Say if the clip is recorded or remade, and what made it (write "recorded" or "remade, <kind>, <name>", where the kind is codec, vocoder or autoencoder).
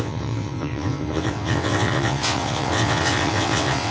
remade, vocoder, WaveNeXt